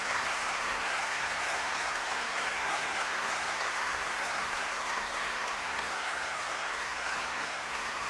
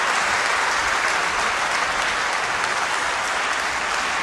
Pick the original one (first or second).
second